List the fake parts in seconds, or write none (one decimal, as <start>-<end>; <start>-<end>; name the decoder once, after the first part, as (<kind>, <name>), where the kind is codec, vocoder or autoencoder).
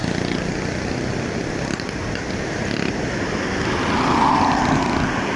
none